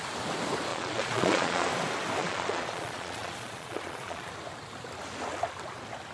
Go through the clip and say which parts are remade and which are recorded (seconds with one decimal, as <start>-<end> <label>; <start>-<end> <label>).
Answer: 0.0-0.7 recorded; 0.7-1.7 remade; 1.7-2.2 recorded; 2.2-4.3 remade; 4.3-6.1 recorded